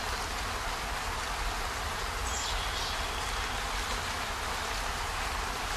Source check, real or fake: real